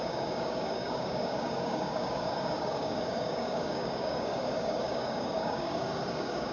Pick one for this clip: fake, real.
fake